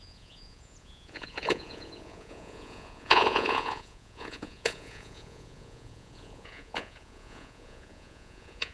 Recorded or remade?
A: remade